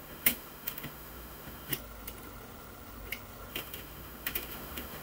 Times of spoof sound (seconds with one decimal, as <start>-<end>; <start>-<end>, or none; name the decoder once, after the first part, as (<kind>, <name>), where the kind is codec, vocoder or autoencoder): 0.0-1.7 (autoencoder, DAC-VAE); 3.5-5.0